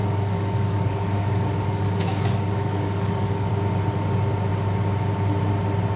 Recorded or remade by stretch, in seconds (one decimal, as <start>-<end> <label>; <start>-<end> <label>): 0.0-3.5 remade; 3.5-6.0 recorded